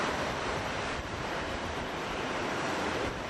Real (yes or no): no